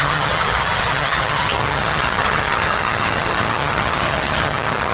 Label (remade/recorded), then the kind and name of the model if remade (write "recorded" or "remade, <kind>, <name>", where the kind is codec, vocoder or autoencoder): remade, vocoder, HiFi-GAN